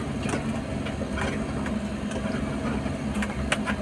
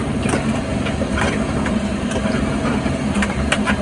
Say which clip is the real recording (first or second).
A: first